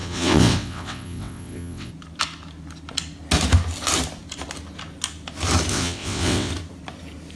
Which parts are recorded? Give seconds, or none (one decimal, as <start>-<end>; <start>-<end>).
1.9-5.7; 6.5-7.4